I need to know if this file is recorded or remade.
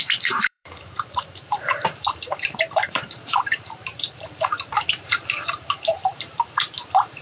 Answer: remade